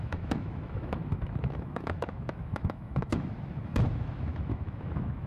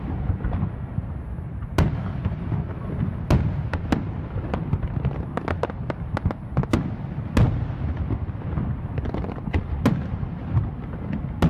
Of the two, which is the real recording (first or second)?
second